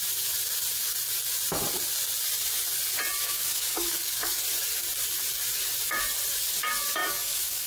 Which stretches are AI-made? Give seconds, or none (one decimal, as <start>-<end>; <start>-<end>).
3.3-4.4; 7.0-7.7